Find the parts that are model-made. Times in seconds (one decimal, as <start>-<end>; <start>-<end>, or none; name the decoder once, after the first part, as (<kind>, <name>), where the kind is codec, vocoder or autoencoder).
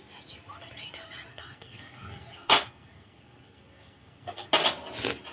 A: 1.3-4.5 (codec, SNAC)